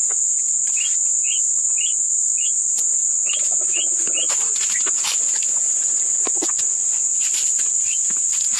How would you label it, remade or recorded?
recorded